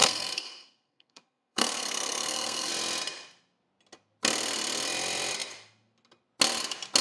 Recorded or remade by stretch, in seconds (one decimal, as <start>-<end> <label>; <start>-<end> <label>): 0.0-2.7 remade; 2.7-7.0 recorded